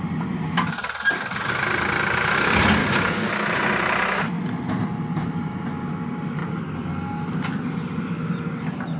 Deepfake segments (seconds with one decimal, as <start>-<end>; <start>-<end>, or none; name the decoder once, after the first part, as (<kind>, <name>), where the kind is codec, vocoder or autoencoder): 2.8-3.3 (codec, DAC)